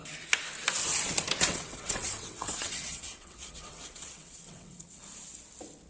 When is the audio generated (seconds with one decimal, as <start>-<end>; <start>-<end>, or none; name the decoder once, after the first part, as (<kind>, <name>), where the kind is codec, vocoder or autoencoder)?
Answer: 1.5-5.0 (vocoder, WaveNeXt)